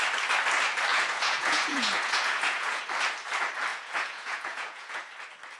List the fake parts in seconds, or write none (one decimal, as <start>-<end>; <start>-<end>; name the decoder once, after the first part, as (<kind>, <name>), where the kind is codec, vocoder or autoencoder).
0.9-2.8 (vocoder, Vocos); 3.7-5.0